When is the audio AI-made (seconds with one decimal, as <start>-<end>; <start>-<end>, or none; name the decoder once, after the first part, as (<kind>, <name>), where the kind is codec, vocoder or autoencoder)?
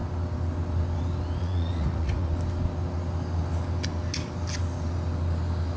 1.4-2.3 (vocoder, Vocos)